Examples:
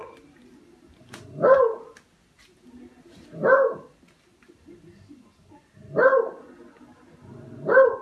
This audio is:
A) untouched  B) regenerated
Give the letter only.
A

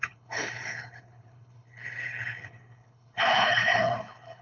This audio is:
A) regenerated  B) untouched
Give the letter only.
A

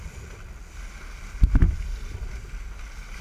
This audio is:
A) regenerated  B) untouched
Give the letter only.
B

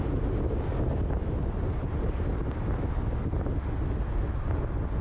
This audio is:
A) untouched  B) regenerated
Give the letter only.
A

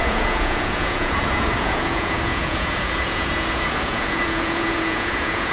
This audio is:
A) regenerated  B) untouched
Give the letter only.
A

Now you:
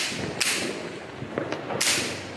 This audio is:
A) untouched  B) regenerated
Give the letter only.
A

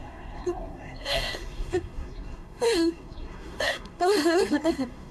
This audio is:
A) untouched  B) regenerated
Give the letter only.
B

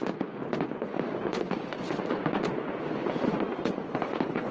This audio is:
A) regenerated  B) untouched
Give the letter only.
A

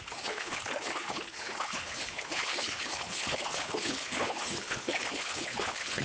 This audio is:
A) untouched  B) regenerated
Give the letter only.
B